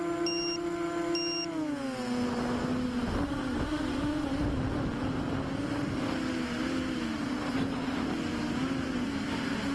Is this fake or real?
real